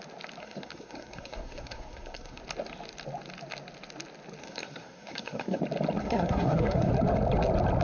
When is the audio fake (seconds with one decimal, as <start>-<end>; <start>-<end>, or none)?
0.4-2.4; 4.4-5.6; 6.0-6.9